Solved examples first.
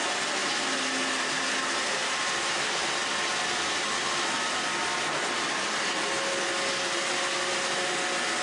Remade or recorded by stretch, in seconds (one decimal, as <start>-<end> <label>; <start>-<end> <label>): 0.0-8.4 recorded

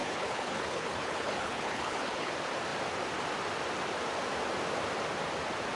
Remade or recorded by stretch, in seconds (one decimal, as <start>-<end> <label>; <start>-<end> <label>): 0.0-2.3 remade; 2.3-5.8 recorded

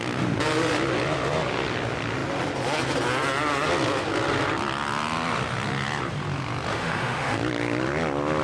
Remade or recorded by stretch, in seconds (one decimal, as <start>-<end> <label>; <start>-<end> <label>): 0.0-6.7 recorded; 6.7-7.4 remade; 7.4-8.4 recorded